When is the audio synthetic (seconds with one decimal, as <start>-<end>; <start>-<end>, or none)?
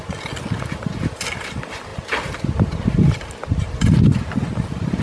none